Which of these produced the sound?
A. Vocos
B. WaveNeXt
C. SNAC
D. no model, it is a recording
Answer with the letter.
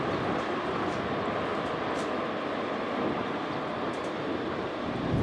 D